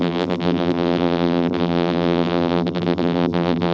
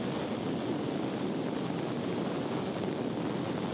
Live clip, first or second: second